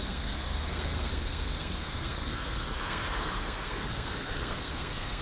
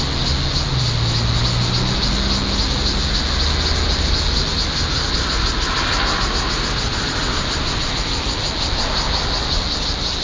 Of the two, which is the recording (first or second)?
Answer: second